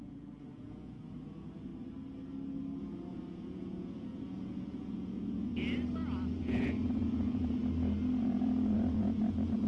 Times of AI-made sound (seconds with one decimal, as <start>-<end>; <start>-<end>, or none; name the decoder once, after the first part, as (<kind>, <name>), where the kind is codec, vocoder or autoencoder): 0.0-1.7 (vocoder, Vocos); 2.8-5.5; 6.4-7.6; 8.2-9.7